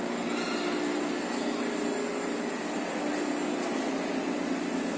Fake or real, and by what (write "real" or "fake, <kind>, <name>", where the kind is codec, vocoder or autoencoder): real